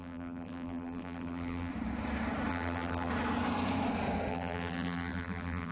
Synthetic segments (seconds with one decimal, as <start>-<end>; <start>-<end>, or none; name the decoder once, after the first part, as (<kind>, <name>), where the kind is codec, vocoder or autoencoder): 0.0-1.7 (vocoder, BigVGAN v2); 2.5-3.1; 4.3-5.7